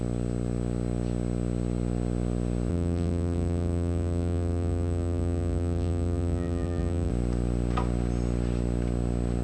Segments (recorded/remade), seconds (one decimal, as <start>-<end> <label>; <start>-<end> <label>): 0.0-2.7 recorded; 2.7-7.1 remade; 7.1-9.4 recorded